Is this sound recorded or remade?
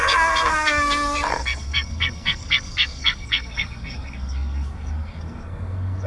remade